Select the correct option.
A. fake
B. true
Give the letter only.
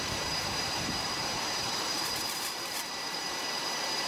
A